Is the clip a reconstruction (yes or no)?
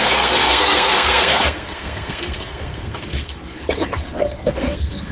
yes